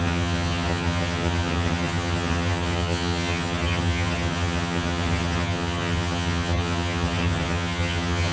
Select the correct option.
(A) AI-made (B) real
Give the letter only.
A